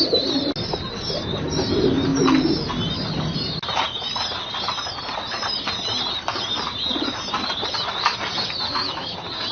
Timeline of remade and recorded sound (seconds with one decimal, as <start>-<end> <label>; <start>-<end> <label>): 0.0-9.5 recorded